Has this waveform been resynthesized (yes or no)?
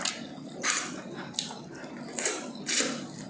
no